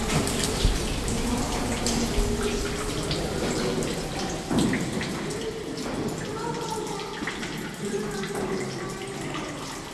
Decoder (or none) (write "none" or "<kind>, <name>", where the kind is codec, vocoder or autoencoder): none